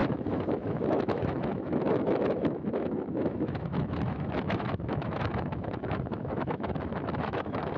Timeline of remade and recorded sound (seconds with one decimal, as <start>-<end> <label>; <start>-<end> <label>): 0.0-7.8 remade